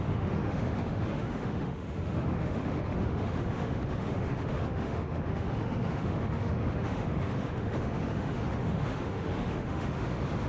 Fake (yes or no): yes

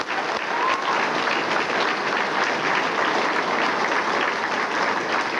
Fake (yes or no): no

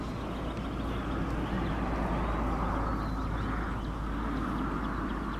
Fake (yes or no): no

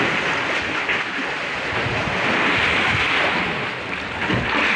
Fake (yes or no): no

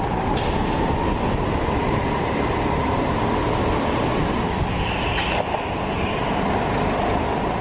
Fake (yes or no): no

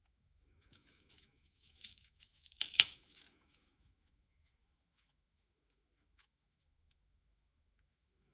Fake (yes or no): yes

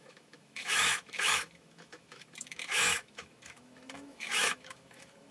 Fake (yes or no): yes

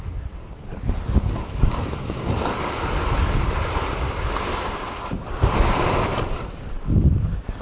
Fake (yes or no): no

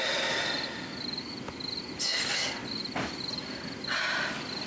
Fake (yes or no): no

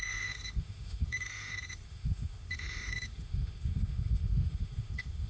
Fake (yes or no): yes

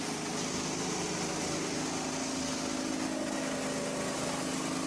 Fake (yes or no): no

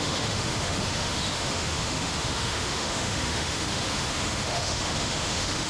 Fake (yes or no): yes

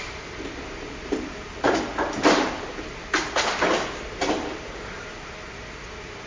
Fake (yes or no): no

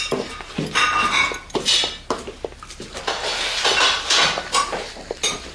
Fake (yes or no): no